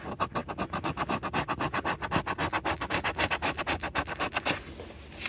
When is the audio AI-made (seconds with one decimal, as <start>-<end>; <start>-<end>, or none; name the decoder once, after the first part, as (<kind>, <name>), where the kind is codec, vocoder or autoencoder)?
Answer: none